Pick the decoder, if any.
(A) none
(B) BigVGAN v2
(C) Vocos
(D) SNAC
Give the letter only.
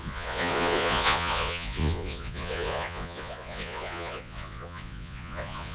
C